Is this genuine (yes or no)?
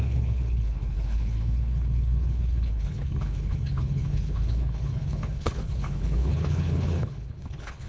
no